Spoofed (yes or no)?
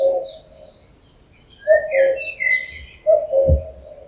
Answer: no